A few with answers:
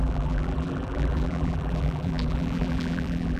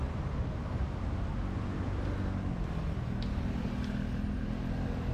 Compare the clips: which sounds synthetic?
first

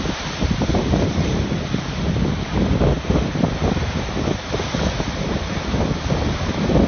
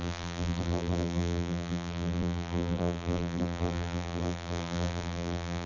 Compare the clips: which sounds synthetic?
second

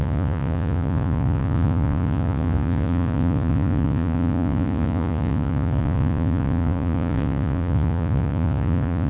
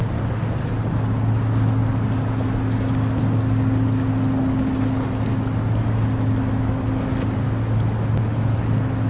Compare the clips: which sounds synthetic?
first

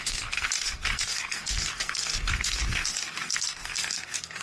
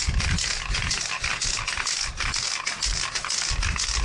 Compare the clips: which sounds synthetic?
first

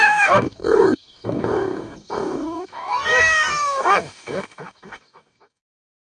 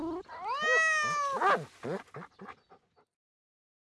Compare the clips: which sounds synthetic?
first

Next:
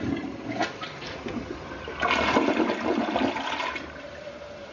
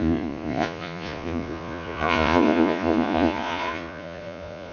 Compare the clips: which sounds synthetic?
second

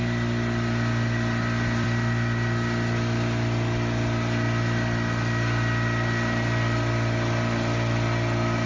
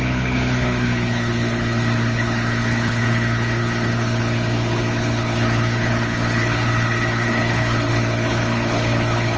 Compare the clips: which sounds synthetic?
second